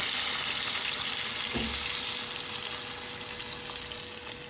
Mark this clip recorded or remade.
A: recorded